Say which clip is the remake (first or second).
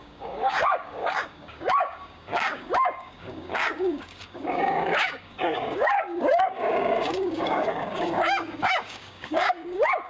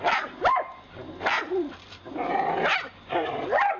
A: first